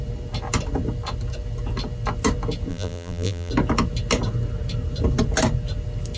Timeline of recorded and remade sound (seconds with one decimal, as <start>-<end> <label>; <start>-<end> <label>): 0.0-2.7 recorded; 2.7-3.5 remade; 3.5-6.2 recorded